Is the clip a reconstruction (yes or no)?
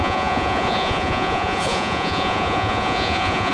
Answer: yes